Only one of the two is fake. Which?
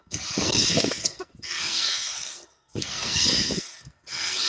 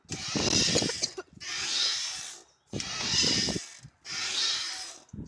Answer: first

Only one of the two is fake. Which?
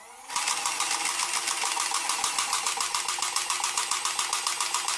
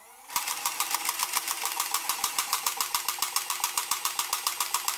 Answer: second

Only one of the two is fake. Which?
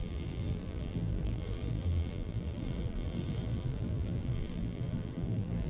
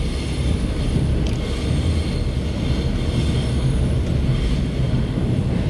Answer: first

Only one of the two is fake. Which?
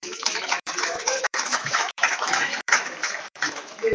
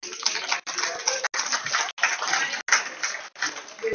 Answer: first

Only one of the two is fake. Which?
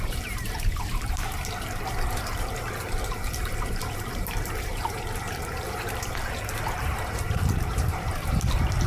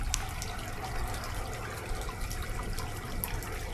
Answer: first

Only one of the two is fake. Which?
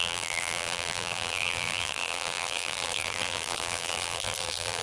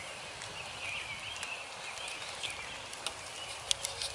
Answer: first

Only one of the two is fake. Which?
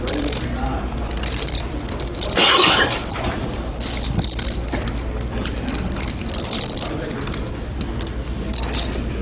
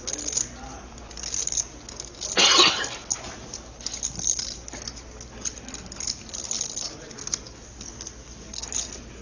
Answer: first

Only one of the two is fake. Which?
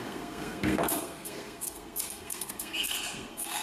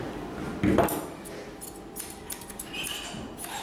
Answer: first